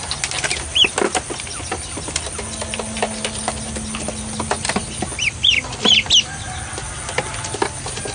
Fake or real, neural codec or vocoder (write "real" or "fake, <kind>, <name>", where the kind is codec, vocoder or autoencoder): real